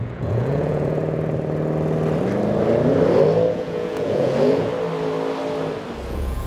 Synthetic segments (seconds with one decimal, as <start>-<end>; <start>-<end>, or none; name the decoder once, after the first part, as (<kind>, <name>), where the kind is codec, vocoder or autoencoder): 0.0-1.0 (vocoder, Vocos); 3.5-4.7; 6.1-6.5